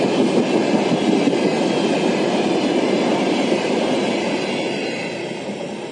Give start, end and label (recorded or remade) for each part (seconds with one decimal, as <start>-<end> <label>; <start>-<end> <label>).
0.0-5.9 recorded